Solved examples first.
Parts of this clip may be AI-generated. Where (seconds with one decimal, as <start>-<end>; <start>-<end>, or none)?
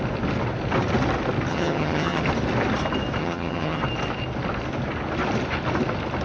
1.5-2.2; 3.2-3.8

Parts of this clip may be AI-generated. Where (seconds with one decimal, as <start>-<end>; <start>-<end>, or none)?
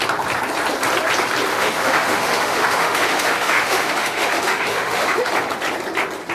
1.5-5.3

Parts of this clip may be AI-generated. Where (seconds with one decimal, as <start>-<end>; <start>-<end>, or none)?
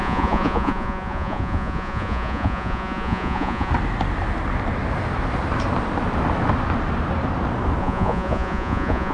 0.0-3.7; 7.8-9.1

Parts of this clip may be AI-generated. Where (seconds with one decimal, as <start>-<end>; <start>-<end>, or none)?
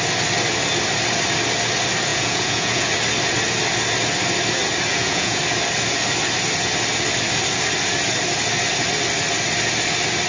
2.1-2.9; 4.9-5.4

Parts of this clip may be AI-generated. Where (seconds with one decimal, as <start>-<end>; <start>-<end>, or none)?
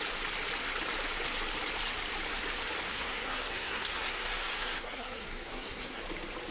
2.9-6.0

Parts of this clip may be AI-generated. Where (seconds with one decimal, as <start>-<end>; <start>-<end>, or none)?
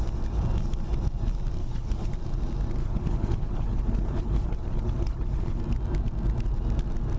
1.6-2.1; 2.8-5.6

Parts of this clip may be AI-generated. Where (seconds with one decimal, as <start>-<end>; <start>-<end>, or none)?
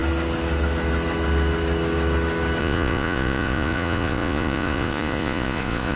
2.6-6.0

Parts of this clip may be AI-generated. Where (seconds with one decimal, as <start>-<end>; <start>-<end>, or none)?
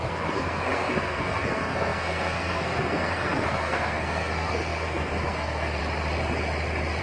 0.0-5.8